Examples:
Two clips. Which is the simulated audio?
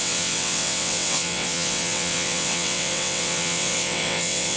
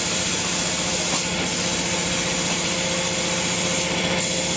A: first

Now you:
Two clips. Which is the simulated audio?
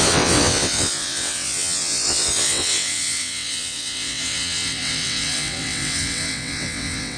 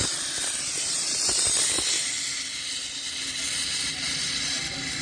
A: first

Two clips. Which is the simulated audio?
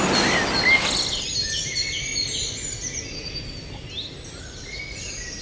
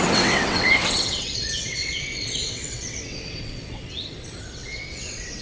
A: second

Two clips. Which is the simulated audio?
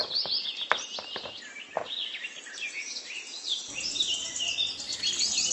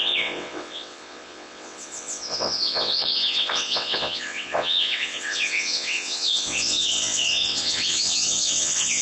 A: second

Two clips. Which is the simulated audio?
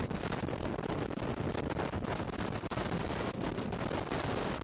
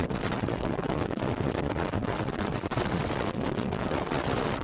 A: second